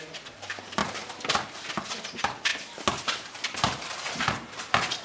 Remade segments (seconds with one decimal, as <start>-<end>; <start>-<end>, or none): none